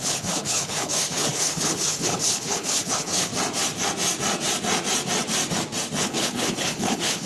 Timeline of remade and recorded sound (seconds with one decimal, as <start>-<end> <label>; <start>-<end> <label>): 0.0-3.3 remade; 3.3-6.0 recorded; 6.0-7.3 remade